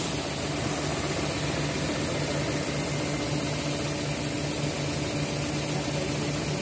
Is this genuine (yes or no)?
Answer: yes